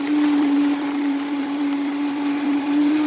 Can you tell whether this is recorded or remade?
remade